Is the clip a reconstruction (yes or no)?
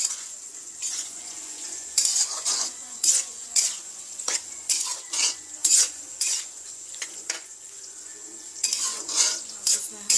yes